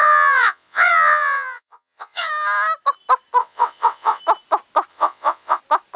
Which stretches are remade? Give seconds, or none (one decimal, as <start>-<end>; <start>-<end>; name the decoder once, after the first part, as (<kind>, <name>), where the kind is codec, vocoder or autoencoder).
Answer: 0.0-2.3 (vocoder, WaveNeXt); 3.4-4.2; 4.9-5.6